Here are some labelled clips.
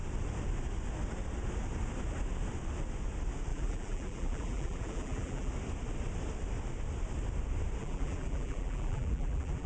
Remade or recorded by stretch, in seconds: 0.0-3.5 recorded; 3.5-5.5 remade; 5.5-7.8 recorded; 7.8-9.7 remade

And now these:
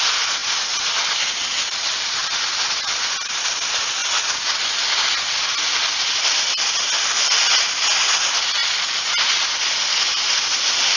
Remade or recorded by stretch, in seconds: 0.0-2.2 recorded; 2.2-3.2 remade; 3.2-11.0 recorded

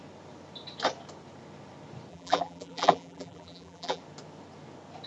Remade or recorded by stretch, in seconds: 0.0-2.1 recorded; 2.1-4.0 remade; 4.0-5.1 recorded

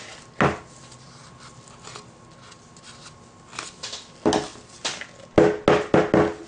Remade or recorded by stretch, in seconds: 0.0-6.5 recorded

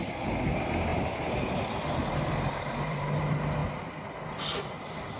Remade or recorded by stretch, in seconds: 0.0-0.9 recorded; 0.9-1.6 remade; 1.6-2.0 recorded; 2.0-3.2 remade; 3.2-5.2 recorded

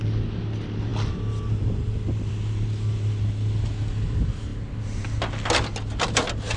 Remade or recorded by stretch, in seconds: 0.0-6.6 recorded

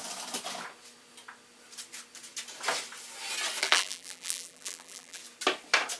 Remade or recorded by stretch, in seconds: 0.0-3.6 recorded; 3.6-5.2 remade; 5.2-6.0 recorded